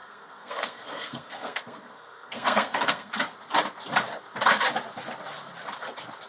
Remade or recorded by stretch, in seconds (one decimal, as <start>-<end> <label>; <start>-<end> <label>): 0.0-3.1 remade; 3.1-6.3 recorded